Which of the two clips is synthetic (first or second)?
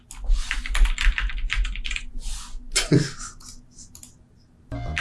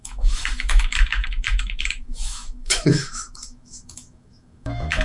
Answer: second